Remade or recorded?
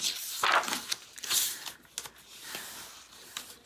recorded